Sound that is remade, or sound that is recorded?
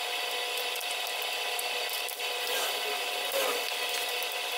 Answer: recorded